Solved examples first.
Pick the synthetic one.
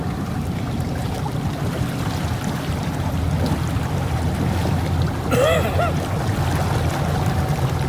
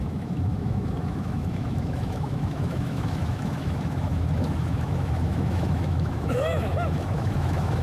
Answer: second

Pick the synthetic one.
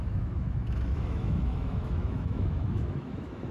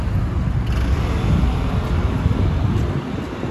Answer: first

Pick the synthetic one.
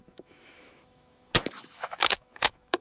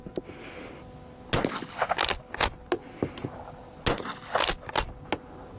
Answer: first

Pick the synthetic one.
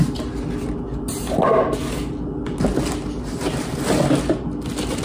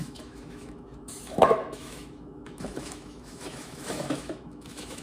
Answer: second